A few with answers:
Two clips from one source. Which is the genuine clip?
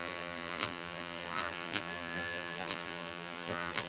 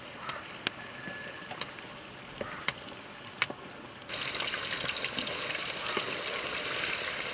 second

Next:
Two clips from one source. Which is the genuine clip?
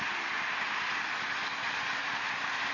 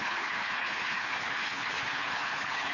first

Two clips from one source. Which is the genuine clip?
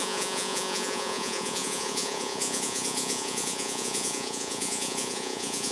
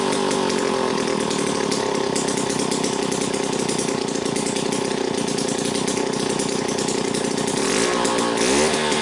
second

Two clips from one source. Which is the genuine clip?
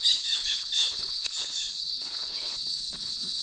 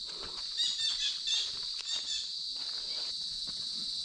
second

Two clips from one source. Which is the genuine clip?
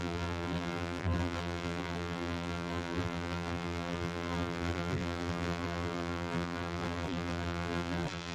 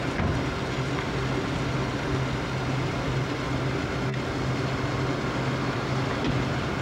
second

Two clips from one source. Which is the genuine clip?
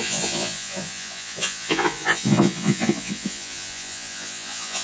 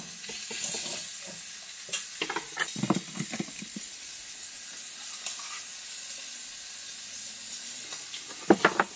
second